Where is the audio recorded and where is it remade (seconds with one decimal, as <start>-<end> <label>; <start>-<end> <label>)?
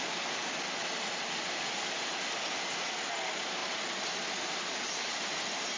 0.0-5.8 recorded